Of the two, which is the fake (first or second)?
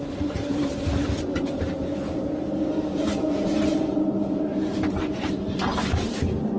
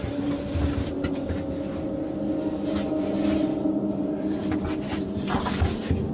first